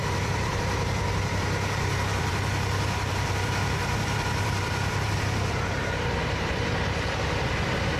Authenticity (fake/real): fake